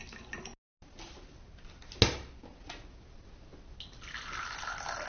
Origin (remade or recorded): recorded